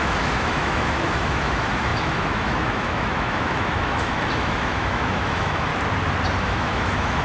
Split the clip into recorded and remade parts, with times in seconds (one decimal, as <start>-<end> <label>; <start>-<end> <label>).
0.0-5.7 remade; 5.7-6.4 recorded; 6.4-7.2 remade